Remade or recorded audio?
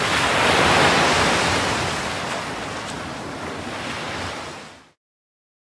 recorded